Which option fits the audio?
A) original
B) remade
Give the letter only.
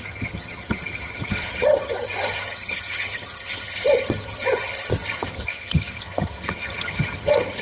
B